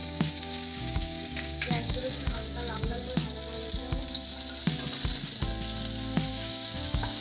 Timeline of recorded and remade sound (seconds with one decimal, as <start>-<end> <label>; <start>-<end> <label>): 0.0-3.0 remade; 3.0-6.3 recorded; 6.3-7.2 remade